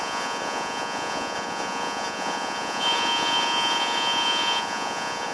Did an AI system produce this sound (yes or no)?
yes